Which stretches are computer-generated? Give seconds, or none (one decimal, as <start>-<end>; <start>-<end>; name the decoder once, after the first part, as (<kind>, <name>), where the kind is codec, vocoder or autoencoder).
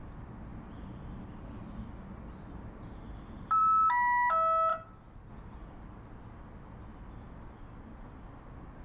none